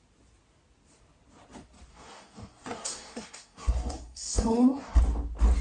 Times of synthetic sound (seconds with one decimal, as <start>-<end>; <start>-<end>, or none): 1.9-5.0